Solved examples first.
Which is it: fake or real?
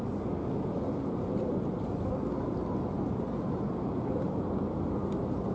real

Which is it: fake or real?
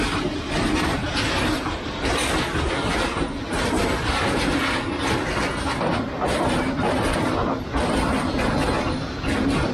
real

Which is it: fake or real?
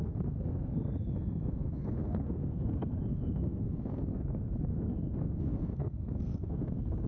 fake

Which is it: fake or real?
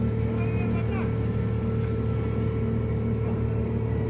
real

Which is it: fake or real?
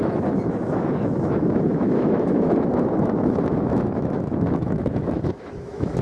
fake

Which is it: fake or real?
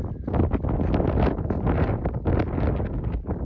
real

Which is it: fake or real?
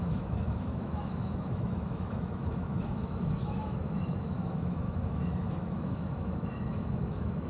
fake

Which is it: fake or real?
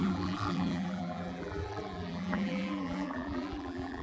fake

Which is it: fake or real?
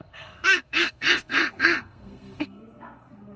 fake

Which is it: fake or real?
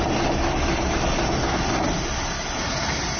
real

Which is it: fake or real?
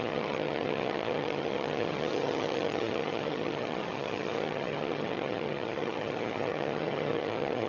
fake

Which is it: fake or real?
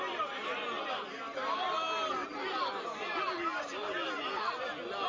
real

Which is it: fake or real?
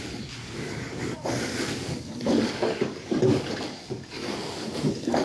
fake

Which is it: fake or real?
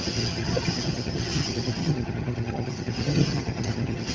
fake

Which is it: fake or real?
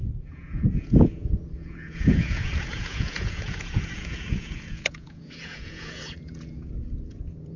fake